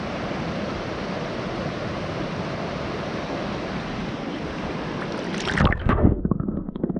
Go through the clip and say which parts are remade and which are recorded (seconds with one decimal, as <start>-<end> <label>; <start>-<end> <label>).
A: 0.0-5.8 recorded; 5.8-7.0 remade